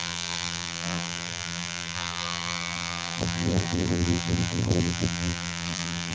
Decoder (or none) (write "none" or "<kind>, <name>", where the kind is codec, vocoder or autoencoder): vocoder, BigVGAN v2